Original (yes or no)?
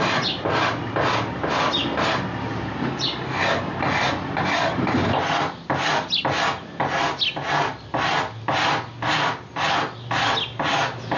yes